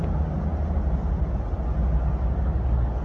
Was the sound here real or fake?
real